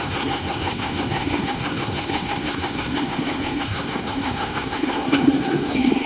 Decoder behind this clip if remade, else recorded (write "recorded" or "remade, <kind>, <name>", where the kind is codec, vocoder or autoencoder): remade, codec, SNAC